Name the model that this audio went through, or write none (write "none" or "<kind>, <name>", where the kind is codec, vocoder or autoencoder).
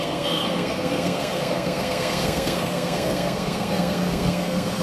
codec, SNAC